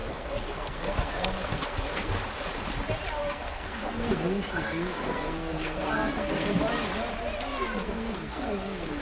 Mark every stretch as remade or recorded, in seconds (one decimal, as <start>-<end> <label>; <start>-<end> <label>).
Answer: 0.0-2.1 remade; 2.1-3.2 recorded; 3.2-6.6 remade; 6.6-7.8 recorded; 7.8-9.0 remade